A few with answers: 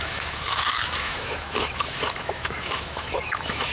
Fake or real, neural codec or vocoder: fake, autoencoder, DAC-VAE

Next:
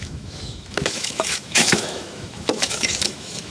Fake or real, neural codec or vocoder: fake, autoencoder, DAC-VAE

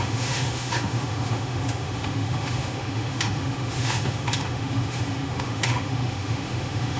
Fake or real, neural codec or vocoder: fake, autoencoder, DAC-VAE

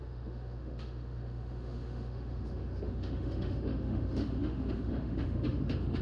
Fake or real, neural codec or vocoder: fake, autoencoder, DAC-VAE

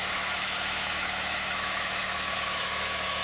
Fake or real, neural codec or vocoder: fake, autoencoder, DAC-VAE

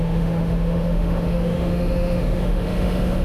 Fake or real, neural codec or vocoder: fake, autoencoder, DAC-VAE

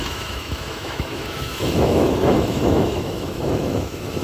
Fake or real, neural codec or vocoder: fake, autoencoder, DAC-VAE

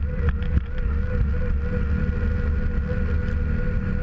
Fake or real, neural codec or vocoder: real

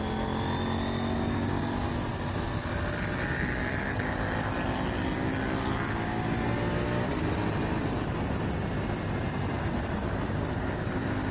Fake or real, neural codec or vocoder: real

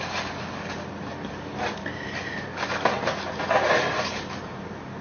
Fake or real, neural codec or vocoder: real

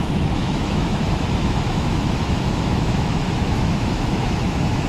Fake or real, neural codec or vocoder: fake, autoencoder, DAC-VAE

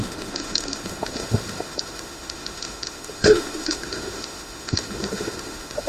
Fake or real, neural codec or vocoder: fake, autoencoder, DAC-VAE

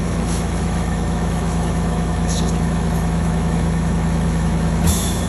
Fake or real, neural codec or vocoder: fake, autoencoder, DAC-VAE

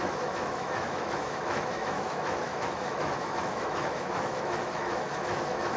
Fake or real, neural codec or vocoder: fake, autoencoder, DAC-VAE